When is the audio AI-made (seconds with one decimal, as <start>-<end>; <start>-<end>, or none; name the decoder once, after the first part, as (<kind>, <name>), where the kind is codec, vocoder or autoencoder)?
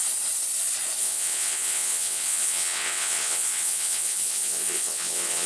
1.0-5.5 (vocoder, WaveNeXt)